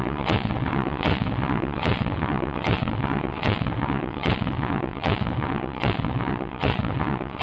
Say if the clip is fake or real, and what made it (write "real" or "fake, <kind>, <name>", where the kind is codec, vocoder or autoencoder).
fake, vocoder, WaveNeXt